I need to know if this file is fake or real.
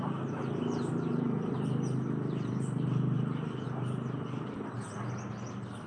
real